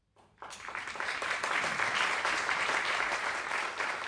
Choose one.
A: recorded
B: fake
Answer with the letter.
A